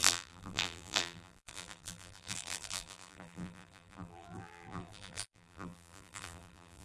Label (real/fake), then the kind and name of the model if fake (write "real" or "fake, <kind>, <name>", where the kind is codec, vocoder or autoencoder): fake, vocoder, BigVGAN v2